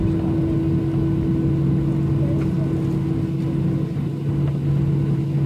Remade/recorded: recorded